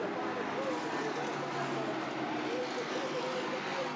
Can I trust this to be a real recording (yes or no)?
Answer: yes